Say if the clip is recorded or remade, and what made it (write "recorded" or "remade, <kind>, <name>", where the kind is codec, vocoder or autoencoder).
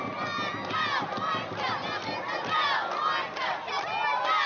recorded